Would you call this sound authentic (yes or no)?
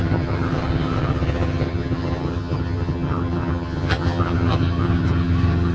no